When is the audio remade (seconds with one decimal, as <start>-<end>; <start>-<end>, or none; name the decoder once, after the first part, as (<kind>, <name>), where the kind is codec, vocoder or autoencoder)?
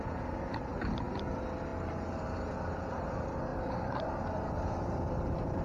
3.5-4.0 (vocoder, BigVGAN v2)